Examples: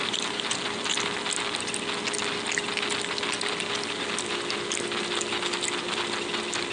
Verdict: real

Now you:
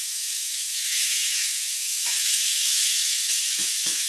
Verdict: fake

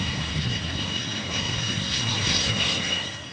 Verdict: fake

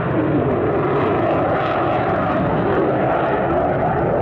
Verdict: real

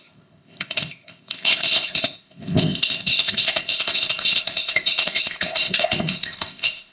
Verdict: fake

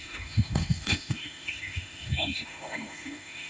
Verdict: fake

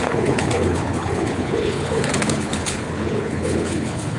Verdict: fake